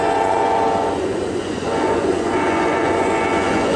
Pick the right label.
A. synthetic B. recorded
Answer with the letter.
A